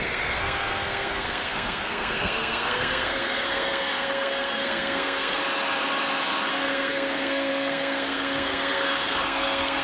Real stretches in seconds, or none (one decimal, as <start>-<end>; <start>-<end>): 5.4-6.5